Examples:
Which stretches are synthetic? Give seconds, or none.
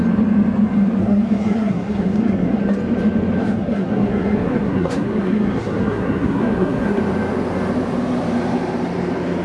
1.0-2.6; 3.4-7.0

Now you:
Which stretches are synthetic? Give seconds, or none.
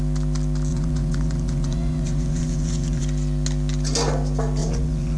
0.7-3.0; 4.6-5.2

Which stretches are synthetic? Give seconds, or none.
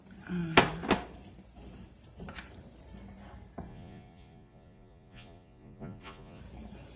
3.7-6.4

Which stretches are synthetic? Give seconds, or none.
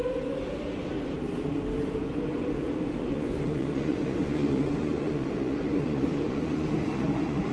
3.1-7.5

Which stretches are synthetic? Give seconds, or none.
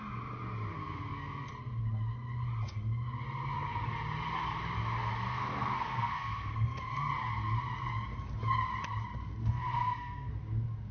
0.7-1.5; 5.0-7.1; 9.4-10.3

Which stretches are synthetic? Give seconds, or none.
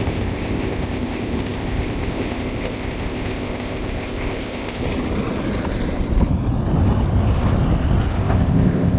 0.0-4.8; 8.2-9.0